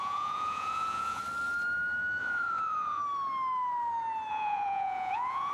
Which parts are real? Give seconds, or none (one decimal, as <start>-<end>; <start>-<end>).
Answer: 1.2-2.2; 3.0-4.3